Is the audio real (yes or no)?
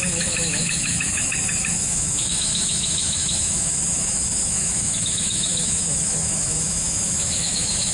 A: no